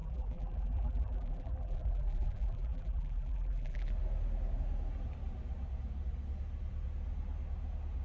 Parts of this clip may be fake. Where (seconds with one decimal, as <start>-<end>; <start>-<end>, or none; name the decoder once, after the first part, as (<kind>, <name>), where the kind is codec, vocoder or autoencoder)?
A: 0.0-3.9 (vocoder, BigVGAN v2)